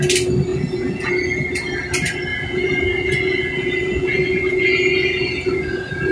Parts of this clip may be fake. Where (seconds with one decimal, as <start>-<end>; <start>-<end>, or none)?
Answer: 0.5-1.1; 2.3-6.1